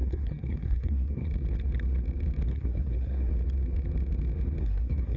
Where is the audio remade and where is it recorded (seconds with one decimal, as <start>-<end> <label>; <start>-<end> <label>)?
0.0-1.3 remade; 1.3-2.5 recorded; 2.5-3.3 remade; 3.3-4.6 recorded; 4.6-5.2 remade